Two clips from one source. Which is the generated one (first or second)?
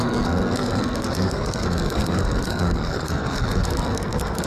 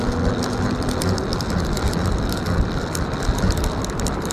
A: first